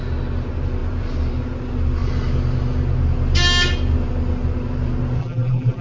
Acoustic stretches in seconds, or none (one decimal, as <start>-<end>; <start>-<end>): 0.0-5.2